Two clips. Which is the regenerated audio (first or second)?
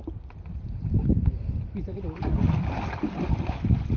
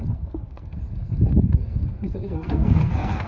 second